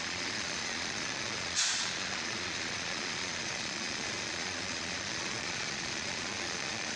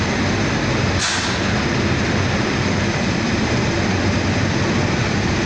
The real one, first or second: second